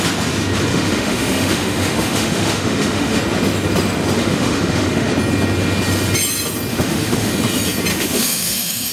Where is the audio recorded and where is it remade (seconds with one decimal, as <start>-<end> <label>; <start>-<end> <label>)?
0.0-0.7 recorded; 0.7-3.2 remade; 3.2-4.2 recorded; 4.2-5.1 remade; 5.1-6.7 recorded; 6.7-7.3 remade; 7.3-7.9 recorded; 7.9-8.9 remade